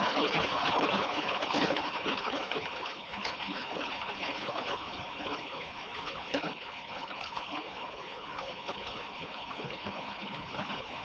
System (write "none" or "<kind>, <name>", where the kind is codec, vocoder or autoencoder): codec, HILCodec